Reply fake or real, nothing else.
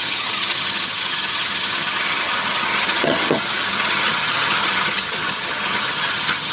fake